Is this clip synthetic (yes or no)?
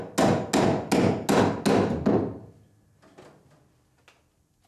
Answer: no